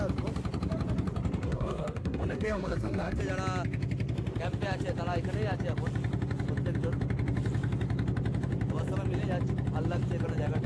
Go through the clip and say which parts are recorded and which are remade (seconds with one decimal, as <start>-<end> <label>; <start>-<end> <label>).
0.0-1.4 recorded; 1.4-3.2 remade; 3.2-10.7 recorded